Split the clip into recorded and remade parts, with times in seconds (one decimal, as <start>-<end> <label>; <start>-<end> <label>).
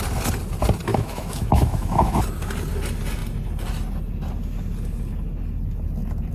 0.0-0.9 recorded; 0.9-2.2 remade; 2.2-6.3 recorded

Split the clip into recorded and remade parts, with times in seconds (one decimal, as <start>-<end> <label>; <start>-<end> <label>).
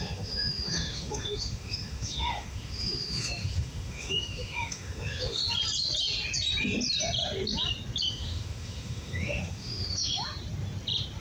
0.0-5.4 remade; 5.4-8.1 recorded; 8.1-10.1 remade; 10.1-11.2 recorded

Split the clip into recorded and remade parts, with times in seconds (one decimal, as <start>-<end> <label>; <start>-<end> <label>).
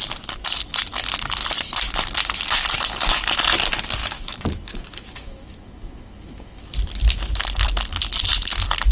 0.0-4.0 recorded; 4.0-6.7 remade; 6.7-8.9 recorded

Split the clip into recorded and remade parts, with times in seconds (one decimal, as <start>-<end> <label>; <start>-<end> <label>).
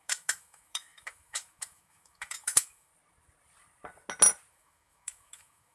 0.0-2.9 remade; 2.9-4.5 recorded; 4.5-5.7 remade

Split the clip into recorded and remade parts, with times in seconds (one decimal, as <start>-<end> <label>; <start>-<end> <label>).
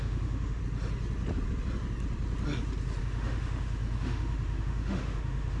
0.0-0.6 remade; 0.6-3.0 recorded; 3.0-5.6 remade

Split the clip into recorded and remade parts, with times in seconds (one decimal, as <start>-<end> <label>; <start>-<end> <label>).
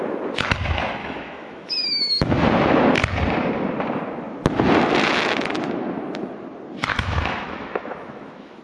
0.0-1.0 recorded; 1.0-2.3 remade; 2.3-6.9 recorded; 6.9-8.6 remade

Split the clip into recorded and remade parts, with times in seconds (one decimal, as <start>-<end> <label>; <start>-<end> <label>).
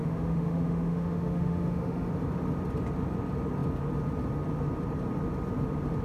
0.0-2.1 remade; 2.1-6.0 recorded